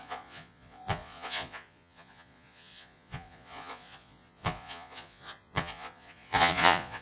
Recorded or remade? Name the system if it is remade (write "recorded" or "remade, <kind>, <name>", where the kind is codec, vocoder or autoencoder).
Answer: remade, vocoder, Vocos